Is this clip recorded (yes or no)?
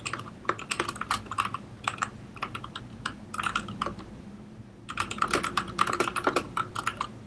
no